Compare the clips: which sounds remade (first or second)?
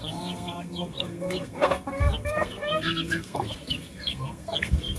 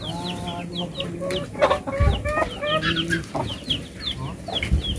first